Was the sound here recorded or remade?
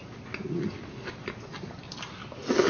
recorded